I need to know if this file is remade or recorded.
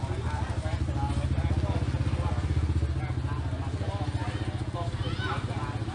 recorded